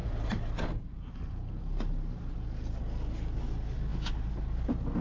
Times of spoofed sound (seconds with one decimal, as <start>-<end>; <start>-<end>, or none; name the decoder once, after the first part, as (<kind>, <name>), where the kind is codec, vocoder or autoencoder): 0.0-2.8 (vocoder, BigVGAN v2)